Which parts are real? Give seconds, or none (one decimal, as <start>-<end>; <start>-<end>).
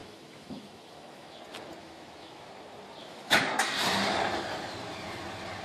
1.4-1.8; 2.5-3.0; 3.5-5.6